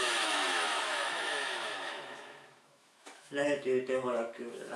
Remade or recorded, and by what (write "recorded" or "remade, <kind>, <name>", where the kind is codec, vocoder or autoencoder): remade, autoencoder, DAC-VAE